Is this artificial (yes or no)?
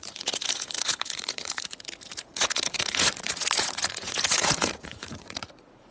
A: yes